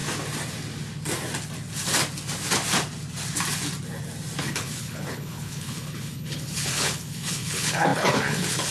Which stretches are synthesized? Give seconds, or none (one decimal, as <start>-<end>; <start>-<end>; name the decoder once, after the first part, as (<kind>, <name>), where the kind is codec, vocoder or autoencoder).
4.4-8.7 (codec, HILCodec)